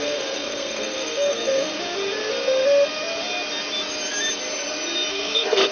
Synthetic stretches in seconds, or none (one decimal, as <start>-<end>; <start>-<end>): 0.0-1.7; 5.1-5.7